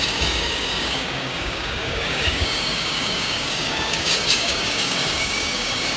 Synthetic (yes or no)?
yes